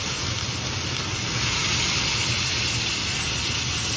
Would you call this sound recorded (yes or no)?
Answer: yes